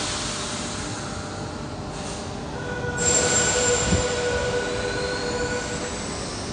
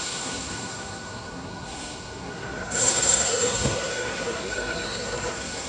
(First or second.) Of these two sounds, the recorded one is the first